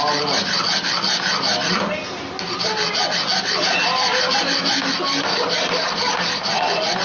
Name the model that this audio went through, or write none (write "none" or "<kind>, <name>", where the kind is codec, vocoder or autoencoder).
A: none